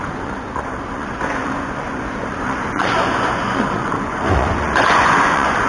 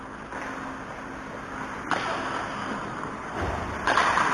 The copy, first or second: first